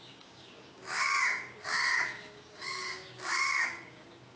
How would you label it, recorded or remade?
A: remade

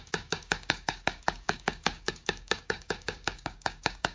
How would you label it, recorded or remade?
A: remade